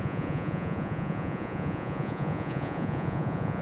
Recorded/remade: remade